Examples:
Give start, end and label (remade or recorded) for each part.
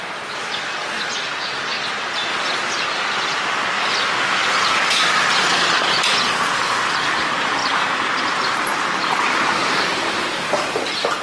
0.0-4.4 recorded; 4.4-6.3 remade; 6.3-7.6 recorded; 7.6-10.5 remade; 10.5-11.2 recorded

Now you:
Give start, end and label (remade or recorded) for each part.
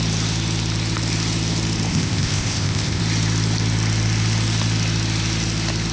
0.0-1.9 recorded; 1.9-3.0 remade; 3.0-5.9 recorded